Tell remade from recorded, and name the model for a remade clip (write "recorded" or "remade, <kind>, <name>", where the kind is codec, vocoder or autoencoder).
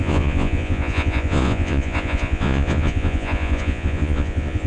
remade, vocoder, Vocos